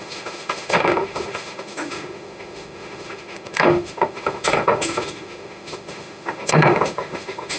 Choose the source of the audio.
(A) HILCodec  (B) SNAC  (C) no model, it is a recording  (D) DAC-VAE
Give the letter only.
D